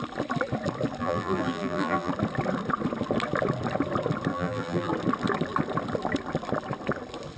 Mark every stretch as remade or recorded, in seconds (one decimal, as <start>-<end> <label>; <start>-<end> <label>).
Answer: 0.0-1.0 recorded; 1.0-2.1 remade; 2.1-4.3 recorded; 4.3-4.9 remade; 4.9-7.4 recorded